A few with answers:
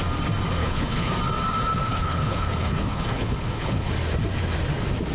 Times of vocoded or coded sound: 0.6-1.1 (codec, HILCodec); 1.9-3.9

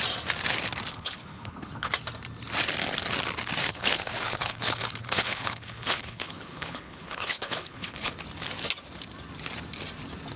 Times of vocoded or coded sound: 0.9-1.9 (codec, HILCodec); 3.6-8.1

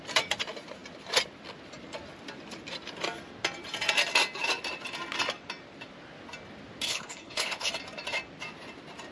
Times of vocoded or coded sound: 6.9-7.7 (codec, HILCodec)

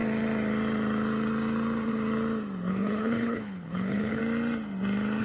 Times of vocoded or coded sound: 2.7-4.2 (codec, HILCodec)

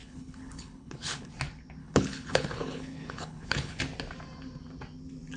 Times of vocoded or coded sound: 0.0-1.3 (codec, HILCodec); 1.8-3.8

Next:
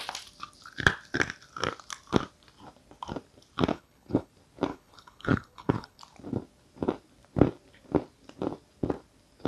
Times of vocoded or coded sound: 3.7-4.3 (codec, HILCodec); 4.7-6.0

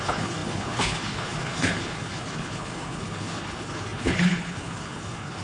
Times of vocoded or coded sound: 0.0-5.4 (codec, HILCodec)